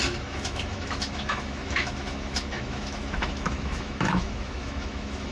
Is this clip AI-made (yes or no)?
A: yes